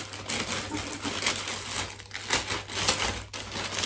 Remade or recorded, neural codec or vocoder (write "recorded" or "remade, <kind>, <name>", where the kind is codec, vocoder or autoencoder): recorded